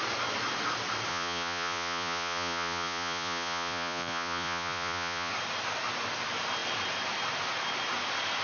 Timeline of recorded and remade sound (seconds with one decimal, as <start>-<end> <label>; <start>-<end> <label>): 0.0-1.1 recorded; 1.1-5.3 remade; 5.3-8.4 recorded